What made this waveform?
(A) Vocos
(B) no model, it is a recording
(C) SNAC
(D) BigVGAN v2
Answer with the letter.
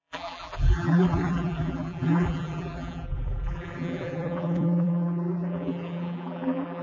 D